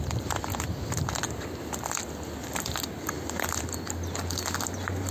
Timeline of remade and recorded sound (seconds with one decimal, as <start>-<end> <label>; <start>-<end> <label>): 0.0-5.1 recorded